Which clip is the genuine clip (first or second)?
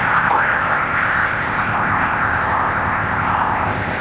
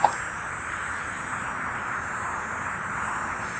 second